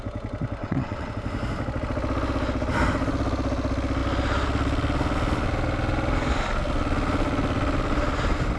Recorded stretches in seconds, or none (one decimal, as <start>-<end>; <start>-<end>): 0.0-0.6; 1.1-8.6